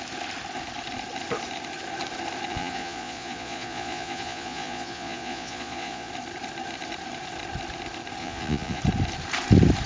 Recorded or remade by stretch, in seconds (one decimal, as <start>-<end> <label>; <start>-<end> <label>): 0.0-2.5 recorded; 2.5-6.1 remade; 6.1-8.2 recorded; 8.2-8.8 remade; 8.8-9.9 recorded